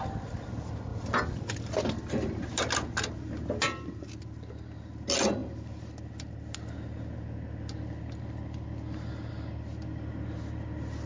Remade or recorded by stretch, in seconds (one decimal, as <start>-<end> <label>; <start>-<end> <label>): 0.0-11.1 recorded